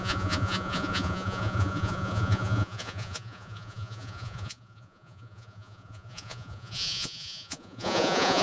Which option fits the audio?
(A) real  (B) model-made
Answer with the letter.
B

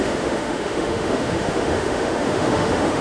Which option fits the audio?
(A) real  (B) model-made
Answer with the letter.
B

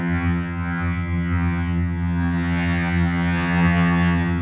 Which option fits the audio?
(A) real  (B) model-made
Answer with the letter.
B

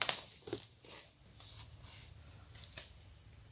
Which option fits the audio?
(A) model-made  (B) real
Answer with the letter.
B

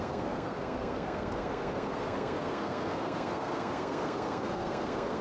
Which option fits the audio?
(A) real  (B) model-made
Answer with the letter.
B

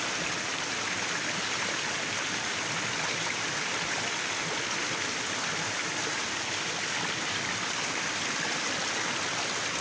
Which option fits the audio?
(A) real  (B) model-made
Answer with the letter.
A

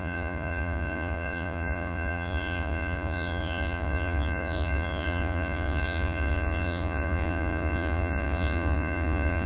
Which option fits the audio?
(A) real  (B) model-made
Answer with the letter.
B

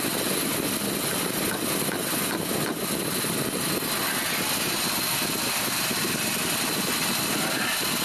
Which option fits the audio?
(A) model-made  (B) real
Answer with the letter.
B